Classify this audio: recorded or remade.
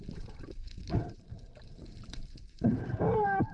remade